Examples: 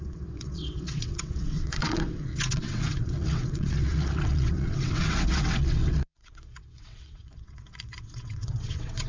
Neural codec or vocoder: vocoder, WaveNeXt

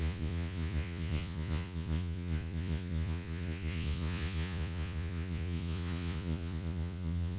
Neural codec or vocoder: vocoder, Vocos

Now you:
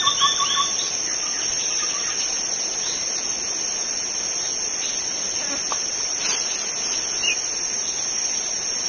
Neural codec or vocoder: none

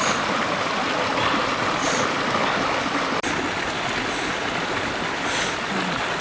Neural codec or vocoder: none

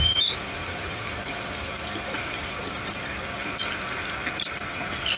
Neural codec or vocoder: none